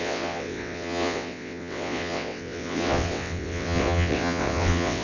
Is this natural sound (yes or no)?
no